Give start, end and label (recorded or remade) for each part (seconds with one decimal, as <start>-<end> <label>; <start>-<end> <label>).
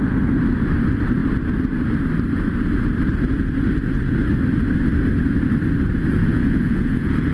0.0-6.2 recorded; 6.2-7.3 remade